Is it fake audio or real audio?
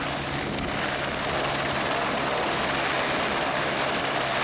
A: real